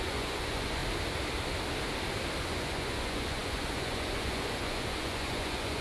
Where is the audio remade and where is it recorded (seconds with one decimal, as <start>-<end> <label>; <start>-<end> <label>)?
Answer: 0.0-0.8 remade; 0.8-2.4 recorded; 2.4-5.8 remade